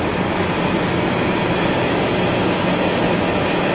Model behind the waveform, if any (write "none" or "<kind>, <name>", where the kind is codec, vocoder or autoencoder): none